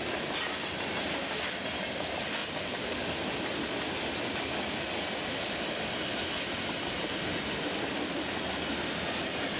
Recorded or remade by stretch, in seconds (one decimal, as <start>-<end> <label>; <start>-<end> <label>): 0.0-9.6 recorded